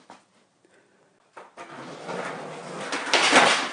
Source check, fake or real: real